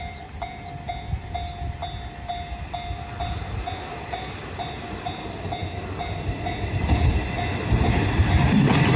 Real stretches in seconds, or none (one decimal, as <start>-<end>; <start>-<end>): 0.0-9.0